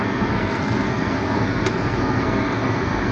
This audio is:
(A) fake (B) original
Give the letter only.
A